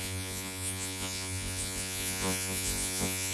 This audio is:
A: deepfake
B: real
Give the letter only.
A